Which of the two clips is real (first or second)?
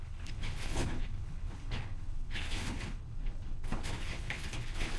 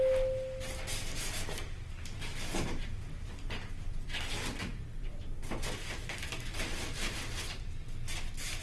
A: second